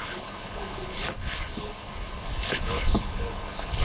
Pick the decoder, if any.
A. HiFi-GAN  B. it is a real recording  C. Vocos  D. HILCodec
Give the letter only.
D